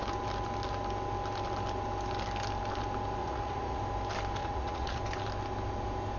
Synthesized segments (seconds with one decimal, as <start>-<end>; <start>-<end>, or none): 3.2-3.8; 4.4-5.0